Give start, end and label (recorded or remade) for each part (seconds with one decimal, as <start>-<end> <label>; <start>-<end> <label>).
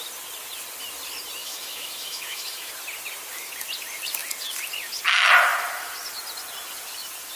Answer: 0.0-1.4 recorded; 1.4-2.7 remade; 2.7-7.4 recorded